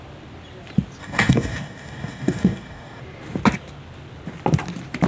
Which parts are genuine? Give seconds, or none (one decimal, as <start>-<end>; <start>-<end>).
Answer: 0.0-1.0; 3.0-5.1